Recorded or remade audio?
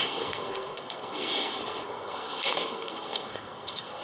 remade